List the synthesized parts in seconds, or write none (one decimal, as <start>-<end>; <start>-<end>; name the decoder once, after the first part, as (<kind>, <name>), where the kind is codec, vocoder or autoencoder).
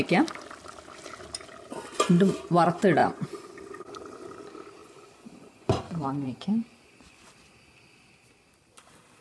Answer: 3.0-3.6 (vocoder, Vocos); 4.8-7.3